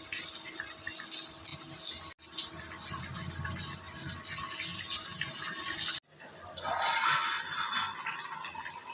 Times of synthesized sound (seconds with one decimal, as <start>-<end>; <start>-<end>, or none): none